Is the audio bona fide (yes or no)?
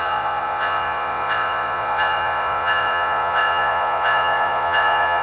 no